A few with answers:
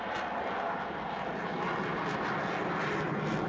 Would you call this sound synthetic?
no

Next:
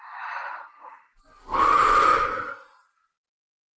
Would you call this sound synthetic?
no